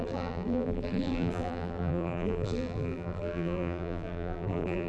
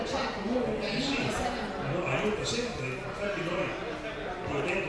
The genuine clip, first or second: second